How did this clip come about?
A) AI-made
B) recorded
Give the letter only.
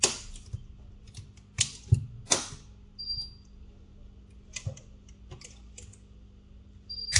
B